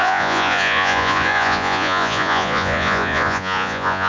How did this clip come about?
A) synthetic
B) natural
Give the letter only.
A